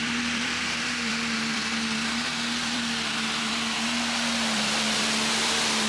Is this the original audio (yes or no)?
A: no